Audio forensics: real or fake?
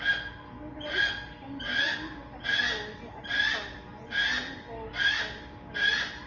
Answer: real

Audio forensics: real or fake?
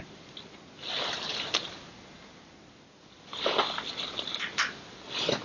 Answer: real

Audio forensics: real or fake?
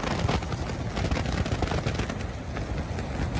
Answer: real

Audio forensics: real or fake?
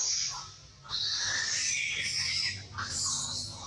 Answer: real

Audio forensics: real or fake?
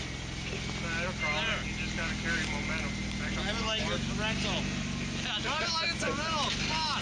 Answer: real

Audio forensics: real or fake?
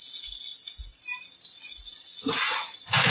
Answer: real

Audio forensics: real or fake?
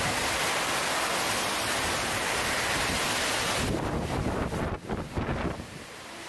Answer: real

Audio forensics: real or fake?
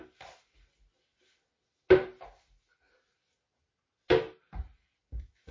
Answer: real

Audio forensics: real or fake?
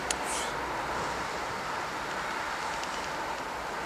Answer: real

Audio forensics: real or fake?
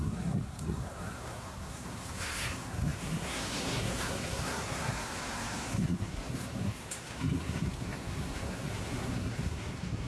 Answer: fake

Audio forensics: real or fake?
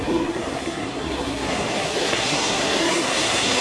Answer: fake